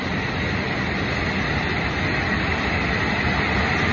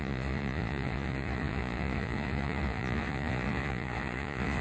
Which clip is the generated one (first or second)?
second